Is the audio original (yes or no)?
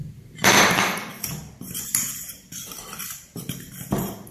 no